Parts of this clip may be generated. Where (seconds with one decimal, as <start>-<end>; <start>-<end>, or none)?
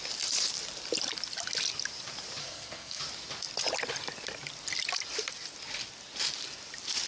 2.4-3.0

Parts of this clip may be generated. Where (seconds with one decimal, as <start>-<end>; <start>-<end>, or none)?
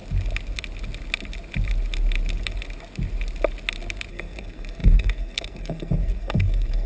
4.1-6.9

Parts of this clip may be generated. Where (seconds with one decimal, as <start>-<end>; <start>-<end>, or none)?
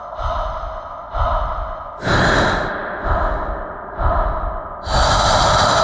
none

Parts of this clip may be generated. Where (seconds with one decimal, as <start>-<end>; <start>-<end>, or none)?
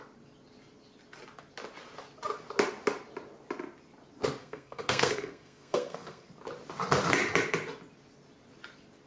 4.4-6.3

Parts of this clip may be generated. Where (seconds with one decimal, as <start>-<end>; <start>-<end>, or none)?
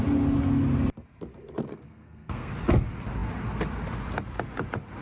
1.7-2.5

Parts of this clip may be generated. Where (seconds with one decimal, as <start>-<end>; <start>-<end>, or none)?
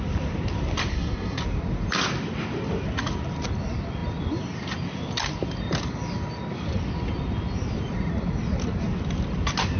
0.9-1.4